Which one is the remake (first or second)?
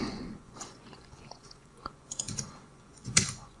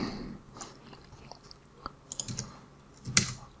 first